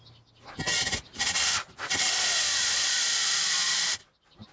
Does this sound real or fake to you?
real